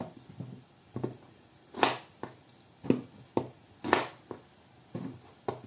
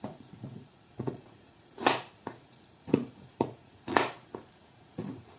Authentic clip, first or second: first